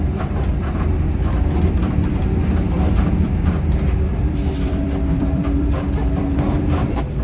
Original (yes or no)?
no